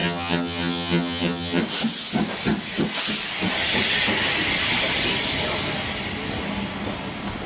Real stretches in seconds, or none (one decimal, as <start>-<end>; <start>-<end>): 1.6-7.5

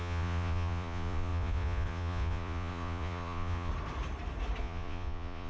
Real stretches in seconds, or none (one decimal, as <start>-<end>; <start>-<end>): 3.7-4.6